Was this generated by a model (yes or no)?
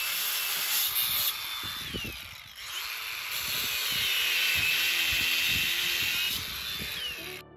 no